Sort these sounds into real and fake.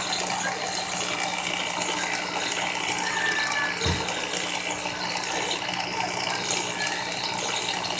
real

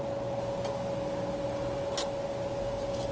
real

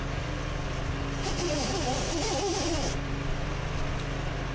real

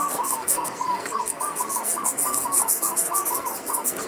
fake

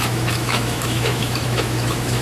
fake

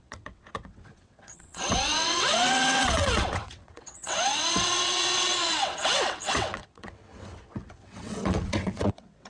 fake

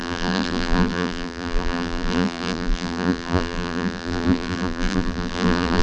fake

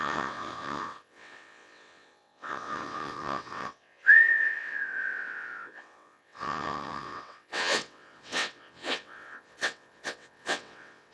fake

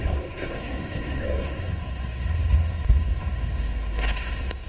fake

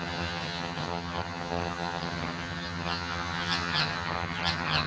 fake